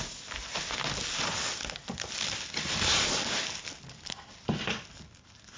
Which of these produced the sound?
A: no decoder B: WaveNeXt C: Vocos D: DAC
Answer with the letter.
A